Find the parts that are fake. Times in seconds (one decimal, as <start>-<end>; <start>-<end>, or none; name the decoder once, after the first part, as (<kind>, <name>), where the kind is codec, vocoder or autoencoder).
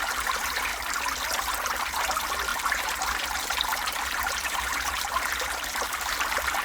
0.0-0.7 (vocoder, BigVGAN v2); 1.4-6.6